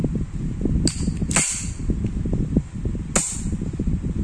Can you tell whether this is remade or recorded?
recorded